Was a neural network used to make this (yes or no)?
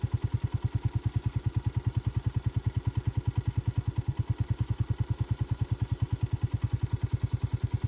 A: no